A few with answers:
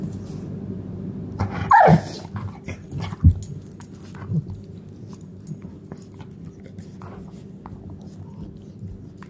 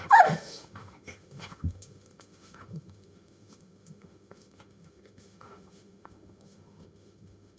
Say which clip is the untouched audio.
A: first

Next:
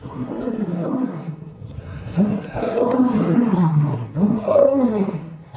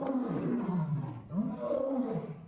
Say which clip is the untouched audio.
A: second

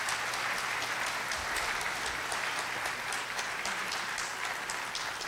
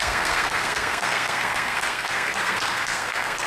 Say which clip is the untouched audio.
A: first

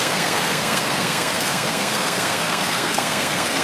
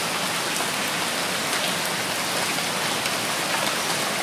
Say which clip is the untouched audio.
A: second